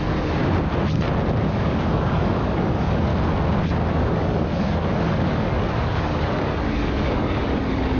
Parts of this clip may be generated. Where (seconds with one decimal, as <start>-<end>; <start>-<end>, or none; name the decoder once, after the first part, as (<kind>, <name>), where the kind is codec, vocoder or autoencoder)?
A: 0.0-0.4 (codec, DAC); 1.4-3.1; 3.9-8.0

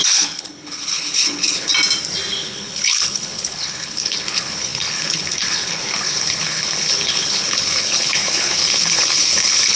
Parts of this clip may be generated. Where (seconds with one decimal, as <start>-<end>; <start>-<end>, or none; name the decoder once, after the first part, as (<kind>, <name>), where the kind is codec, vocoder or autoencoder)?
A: 0.0-1.7 (codec, HILCodec); 2.3-9.8